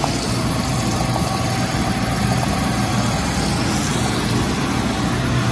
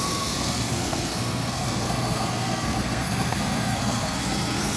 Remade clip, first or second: second